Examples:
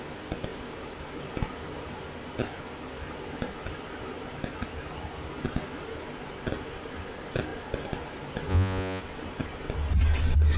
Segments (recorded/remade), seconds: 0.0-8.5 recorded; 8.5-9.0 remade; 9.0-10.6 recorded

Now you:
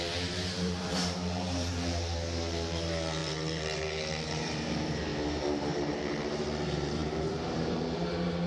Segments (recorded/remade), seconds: 0.0-8.5 remade

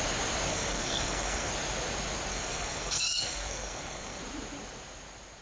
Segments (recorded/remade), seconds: 0.0-0.5 recorded; 0.5-1.5 remade; 1.5-2.3 recorded; 2.3-4.2 remade; 4.2-5.4 recorded

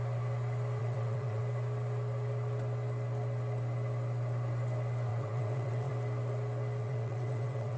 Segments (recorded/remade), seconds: 0.0-0.8 recorded; 0.8-1.4 remade; 1.4-5.1 recorded; 5.1-5.9 remade; 5.9-6.8 recorded; 6.8-7.8 remade